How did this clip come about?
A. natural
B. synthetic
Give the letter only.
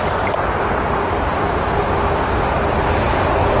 A